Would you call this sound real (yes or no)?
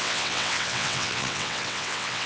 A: no